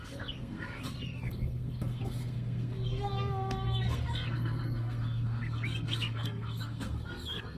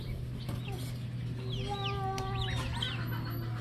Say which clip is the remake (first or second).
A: first